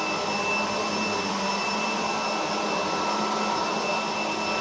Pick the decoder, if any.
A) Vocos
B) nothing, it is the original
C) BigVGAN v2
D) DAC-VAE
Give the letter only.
B